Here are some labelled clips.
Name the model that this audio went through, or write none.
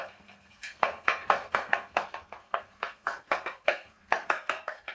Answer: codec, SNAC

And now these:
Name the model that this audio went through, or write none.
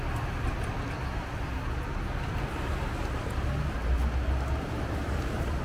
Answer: none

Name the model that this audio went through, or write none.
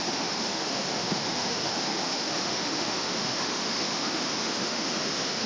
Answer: autoencoder, DAC-VAE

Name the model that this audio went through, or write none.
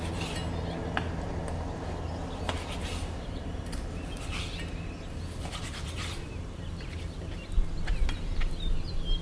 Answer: none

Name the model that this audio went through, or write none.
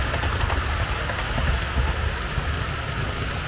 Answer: none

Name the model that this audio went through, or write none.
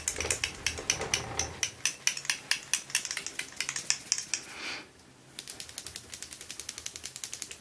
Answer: none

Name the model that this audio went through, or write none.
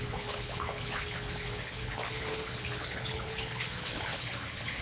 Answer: codec, HILCodec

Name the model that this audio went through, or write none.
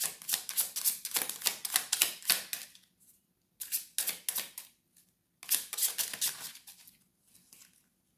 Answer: none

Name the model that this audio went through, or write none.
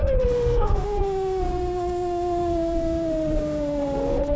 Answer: autoencoder, DAC-VAE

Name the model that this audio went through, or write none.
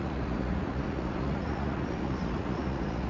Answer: vocoder, Vocos